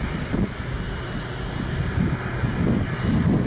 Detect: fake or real real